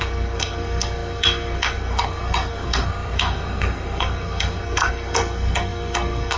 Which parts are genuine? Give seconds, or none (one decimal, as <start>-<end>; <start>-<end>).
none